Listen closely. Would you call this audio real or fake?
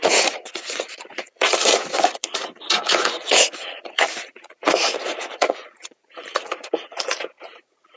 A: fake